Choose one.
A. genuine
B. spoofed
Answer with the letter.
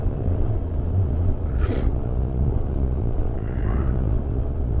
B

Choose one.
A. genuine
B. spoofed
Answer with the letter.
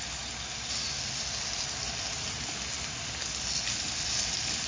A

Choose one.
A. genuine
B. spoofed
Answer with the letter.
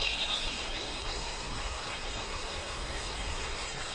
B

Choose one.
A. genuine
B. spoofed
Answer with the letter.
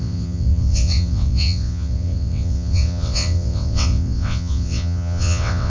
B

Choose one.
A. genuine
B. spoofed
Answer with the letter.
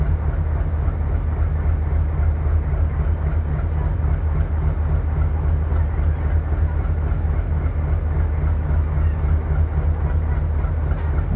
A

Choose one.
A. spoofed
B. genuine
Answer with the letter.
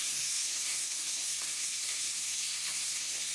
A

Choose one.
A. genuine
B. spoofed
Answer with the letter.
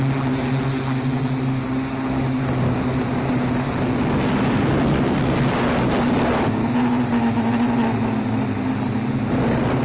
A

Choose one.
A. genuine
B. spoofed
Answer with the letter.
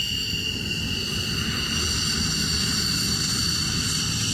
A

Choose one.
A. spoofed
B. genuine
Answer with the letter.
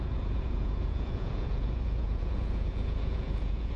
A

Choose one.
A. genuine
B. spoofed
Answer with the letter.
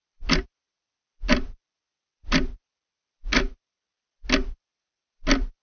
A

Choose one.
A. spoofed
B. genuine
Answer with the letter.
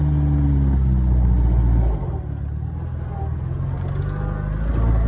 B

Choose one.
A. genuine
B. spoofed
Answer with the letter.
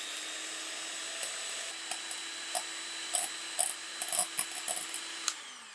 A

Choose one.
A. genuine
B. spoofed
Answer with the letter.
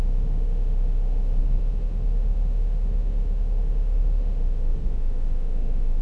B